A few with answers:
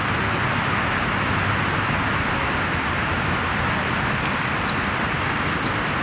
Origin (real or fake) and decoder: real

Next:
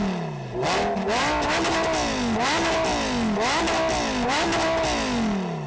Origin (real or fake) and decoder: real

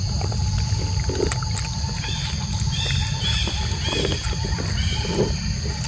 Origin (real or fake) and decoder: real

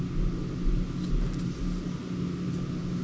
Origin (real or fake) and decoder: real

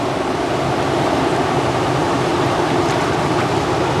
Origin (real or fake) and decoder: real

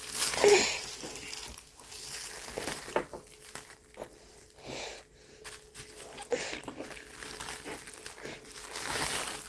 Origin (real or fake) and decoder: real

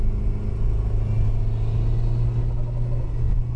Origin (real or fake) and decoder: real